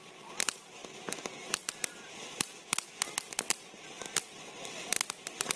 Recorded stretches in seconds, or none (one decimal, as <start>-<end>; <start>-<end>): 0.0-5.6

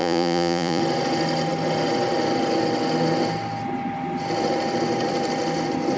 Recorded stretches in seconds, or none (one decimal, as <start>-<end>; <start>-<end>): 0.8-6.0

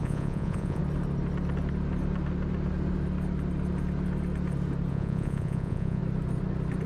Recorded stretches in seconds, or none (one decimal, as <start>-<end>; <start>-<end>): 0.8-4.9; 6.0-6.9

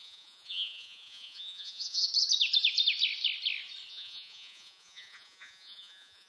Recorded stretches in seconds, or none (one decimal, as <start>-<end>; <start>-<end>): 2.1-3.9

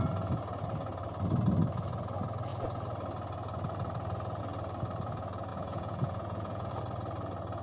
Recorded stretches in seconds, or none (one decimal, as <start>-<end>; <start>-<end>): 0.0-5.5; 6.7-7.6

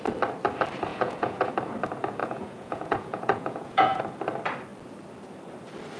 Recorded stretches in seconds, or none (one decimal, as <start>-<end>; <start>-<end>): 0.0-0.9; 1.5-2.2; 4.0-6.0

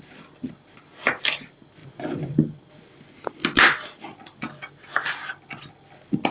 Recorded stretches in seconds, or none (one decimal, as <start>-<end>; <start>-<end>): 0.0-6.3

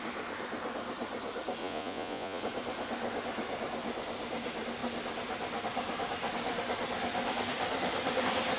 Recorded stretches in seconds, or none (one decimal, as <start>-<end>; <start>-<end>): 0.0-1.6; 2.4-8.6